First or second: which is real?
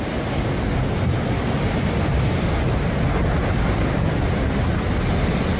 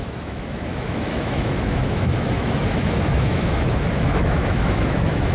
first